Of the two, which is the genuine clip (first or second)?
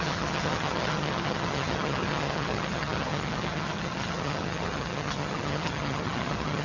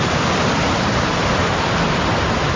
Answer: second